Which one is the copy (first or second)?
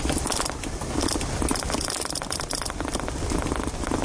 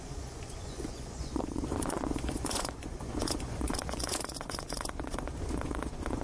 second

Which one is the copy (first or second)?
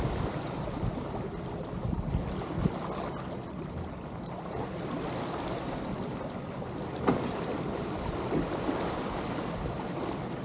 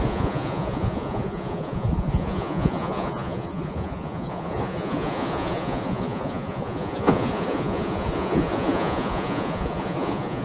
second